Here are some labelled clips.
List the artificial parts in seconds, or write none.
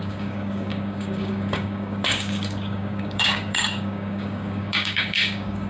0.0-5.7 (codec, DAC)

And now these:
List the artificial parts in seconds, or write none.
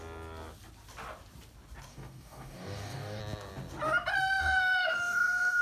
1.9-3.2 (codec, DAC); 4.4-5.6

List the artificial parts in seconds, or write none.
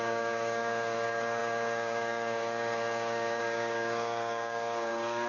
0.0-5.3 (codec, DAC)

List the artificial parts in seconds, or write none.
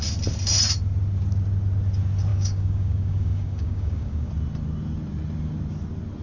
2.3-4.3 (codec, DAC)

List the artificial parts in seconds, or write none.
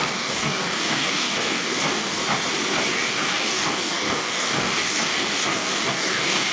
0.0-2.2 (codec, DAC); 2.9-6.5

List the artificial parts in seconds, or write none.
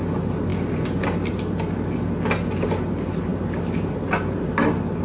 none